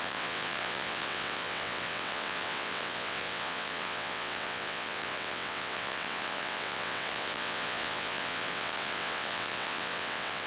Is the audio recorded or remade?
remade